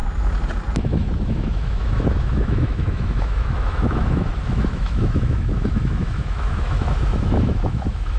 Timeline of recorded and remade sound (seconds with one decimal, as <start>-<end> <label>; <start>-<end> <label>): 0.0-0.8 recorded; 0.8-8.2 remade